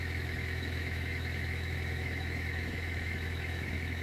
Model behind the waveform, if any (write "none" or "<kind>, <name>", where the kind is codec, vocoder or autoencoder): autoencoder, DAC-VAE